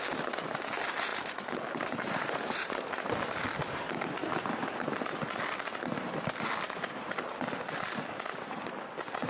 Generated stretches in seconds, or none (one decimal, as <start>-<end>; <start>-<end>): 1.1-3.4